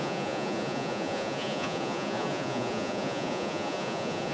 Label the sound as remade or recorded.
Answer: remade